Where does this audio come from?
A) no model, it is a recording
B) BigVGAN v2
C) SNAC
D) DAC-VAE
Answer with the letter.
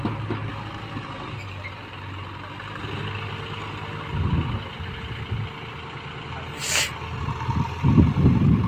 A